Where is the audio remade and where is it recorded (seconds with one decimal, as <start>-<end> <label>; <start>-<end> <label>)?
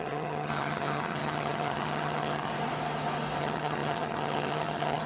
0.0-2.5 remade; 2.5-3.4 recorded; 3.4-5.1 remade